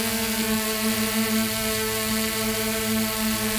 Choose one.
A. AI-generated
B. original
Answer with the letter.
B